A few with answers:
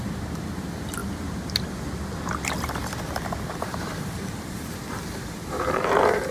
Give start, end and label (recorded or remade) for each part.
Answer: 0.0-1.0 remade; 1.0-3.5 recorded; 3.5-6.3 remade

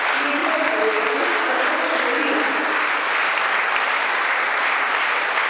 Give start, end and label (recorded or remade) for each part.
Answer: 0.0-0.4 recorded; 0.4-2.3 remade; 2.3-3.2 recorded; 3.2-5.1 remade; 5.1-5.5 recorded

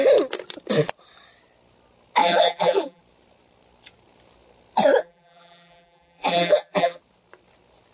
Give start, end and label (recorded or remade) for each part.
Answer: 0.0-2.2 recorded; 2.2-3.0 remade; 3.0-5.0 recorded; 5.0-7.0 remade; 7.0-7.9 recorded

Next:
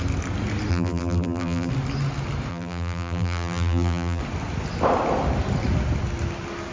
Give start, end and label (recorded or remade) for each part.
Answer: 0.0-0.7 recorded; 0.7-1.7 remade; 1.7-2.5 recorded; 2.5-4.2 remade; 4.2-6.7 recorded

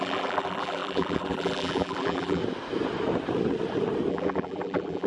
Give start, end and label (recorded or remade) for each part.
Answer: 0.0-2.4 remade; 2.4-4.1 recorded; 4.1-5.1 remade

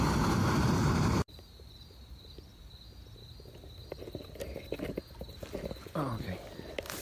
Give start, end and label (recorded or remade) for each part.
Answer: 0.0-2.5 remade; 2.5-7.0 recorded